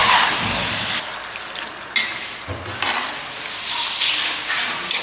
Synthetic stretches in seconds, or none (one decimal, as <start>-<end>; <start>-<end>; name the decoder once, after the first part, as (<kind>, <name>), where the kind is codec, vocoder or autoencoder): none